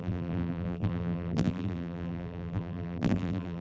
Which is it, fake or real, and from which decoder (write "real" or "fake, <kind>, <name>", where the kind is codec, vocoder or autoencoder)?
fake, vocoder, BigVGAN v2